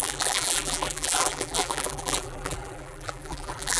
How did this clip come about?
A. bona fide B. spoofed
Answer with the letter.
B